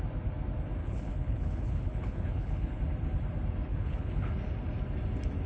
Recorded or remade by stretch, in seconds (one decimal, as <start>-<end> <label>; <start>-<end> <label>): 0.0-0.8 recorded; 0.8-2.8 remade; 2.8-3.7 recorded; 3.7-4.3 remade; 4.3-5.5 recorded